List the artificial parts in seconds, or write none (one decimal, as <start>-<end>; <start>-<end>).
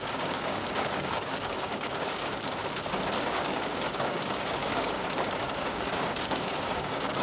0.0-2.6; 3.2-7.2